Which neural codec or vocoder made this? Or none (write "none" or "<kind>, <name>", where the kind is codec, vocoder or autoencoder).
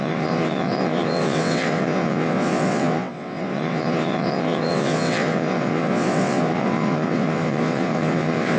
vocoder, WaveNeXt